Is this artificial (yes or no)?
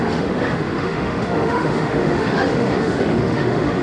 yes